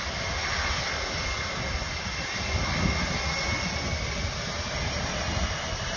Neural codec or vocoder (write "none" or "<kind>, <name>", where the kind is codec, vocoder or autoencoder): none